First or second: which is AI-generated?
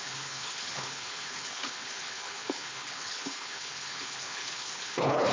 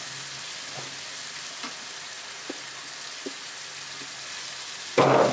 first